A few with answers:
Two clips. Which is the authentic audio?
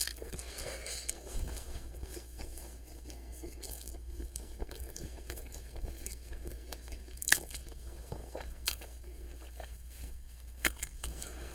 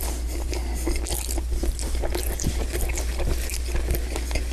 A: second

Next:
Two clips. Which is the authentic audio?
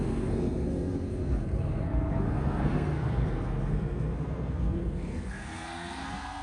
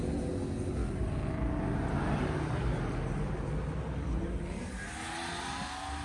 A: second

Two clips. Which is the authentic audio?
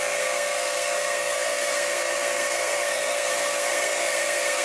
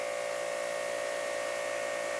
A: second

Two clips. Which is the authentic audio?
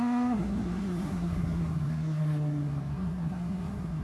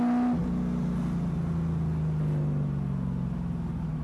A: second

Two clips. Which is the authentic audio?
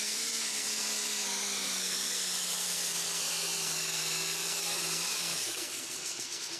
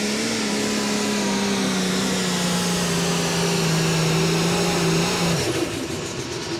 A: second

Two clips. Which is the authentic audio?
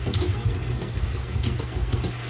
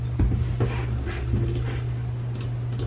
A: second